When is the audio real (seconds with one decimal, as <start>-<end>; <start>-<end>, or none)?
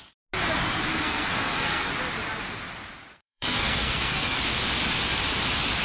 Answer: 0.0-0.9; 1.9-3.1; 4.4-5.8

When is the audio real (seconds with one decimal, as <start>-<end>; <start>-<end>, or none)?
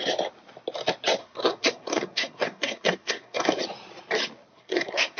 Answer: 0.0-1.2; 3.6-4.5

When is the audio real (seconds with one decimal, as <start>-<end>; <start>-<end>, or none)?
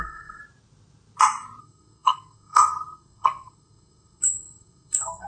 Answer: 0.4-1.6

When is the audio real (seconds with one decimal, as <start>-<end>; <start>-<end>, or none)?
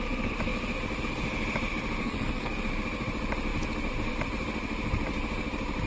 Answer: 0.0-2.0; 2.6-5.9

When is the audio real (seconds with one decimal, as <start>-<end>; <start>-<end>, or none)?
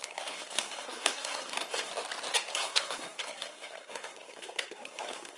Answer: 1.9-2.5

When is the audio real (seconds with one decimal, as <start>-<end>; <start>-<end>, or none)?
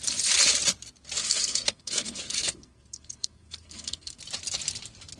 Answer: 0.0-1.2; 4.2-5.2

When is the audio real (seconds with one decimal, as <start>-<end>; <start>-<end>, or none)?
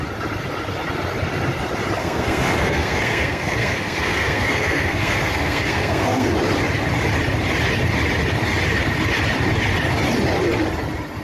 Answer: 0.0-2.0; 6.3-11.2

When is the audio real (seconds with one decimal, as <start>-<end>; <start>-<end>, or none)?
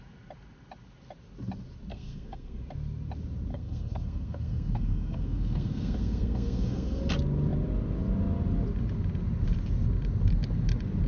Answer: 0.0-1.9; 2.6-3.5; 7.0-11.1